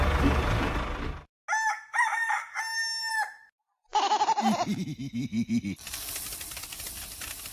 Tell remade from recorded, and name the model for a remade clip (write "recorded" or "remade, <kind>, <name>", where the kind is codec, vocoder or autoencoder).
recorded